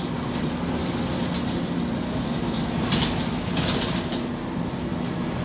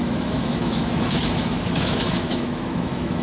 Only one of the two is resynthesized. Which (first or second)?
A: second